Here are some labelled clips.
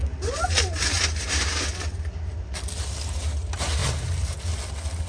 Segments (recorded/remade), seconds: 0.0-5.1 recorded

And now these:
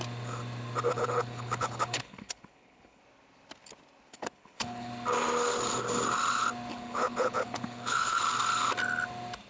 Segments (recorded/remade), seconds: 0.0-0.9 recorded; 0.9-3.0 remade; 3.0-4.1 recorded; 4.1-4.9 remade; 4.9-6.7 recorded; 6.7-8.2 remade; 8.2-9.5 recorded

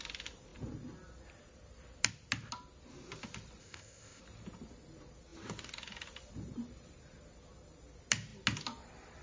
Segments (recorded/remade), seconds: 0.0-3.6 recorded; 3.6-4.2 remade; 4.2-9.2 recorded

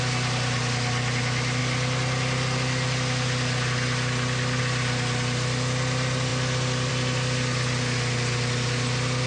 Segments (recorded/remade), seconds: 0.0-9.3 recorded